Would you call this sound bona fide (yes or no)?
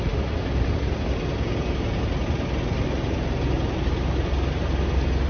yes